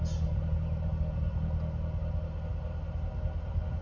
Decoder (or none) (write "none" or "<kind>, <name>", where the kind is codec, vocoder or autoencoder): none